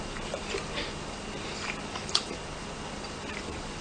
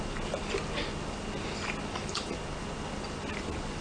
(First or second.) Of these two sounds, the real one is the second